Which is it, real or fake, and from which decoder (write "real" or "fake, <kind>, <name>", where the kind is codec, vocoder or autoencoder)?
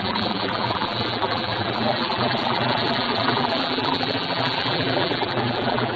fake, vocoder, BigVGAN v2